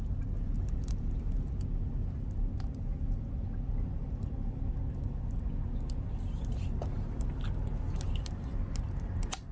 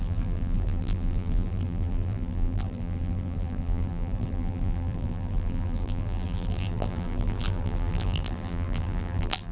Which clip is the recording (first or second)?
first